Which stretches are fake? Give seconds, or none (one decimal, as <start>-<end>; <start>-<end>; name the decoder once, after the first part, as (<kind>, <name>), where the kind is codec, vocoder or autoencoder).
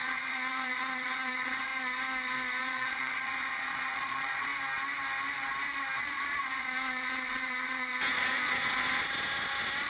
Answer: 0.0-1.7 (vocoder, Vocos); 2.6-4.5; 6.0-7.9